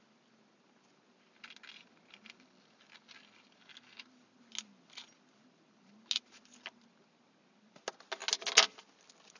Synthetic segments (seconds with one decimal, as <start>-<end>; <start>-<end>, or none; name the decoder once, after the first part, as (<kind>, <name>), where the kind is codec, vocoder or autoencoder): none